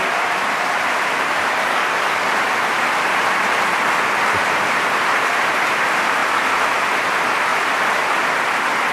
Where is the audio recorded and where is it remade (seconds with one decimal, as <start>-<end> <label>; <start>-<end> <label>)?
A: 0.0-1.7 recorded; 1.7-2.4 remade; 2.4-8.9 recorded